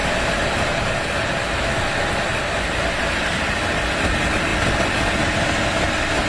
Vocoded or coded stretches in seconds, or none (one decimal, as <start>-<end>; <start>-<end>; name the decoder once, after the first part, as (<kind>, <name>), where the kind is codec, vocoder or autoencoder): none